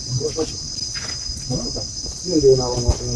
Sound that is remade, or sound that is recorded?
recorded